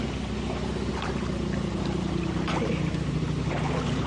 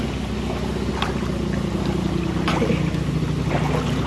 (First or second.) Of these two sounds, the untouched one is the second